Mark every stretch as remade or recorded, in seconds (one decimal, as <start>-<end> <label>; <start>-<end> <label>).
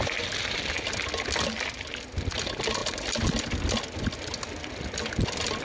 0.0-5.6 recorded